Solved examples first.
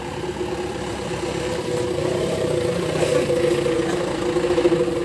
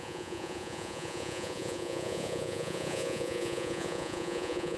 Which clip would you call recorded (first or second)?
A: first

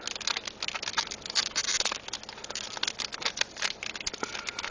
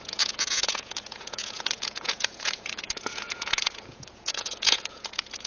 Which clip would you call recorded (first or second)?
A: first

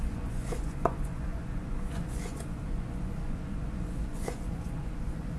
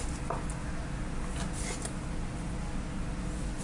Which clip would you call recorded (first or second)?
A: second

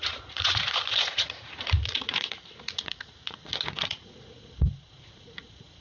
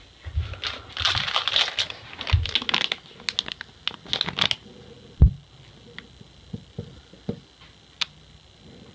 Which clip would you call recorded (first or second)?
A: second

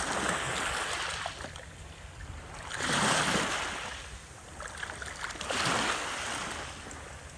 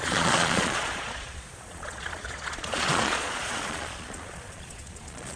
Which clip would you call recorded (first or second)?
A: first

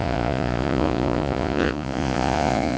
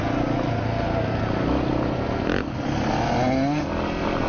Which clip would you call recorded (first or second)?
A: second